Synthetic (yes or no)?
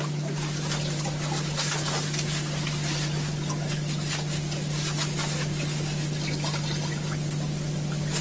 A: no